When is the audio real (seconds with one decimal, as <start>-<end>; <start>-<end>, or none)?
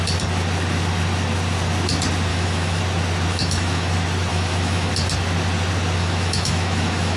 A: 0.0-2.3; 2.8-3.3; 3.9-4.3; 4.9-6.0